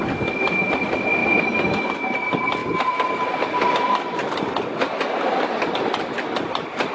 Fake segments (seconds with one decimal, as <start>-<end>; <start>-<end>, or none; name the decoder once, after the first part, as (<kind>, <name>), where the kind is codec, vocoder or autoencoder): 1.2-1.9 (vocoder, BigVGAN v2)